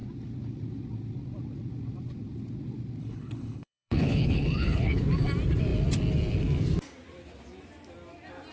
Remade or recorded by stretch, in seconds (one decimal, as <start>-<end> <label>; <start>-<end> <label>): 0.0-3.0 recorded; 3.0-5.0 remade; 5.0-8.5 recorded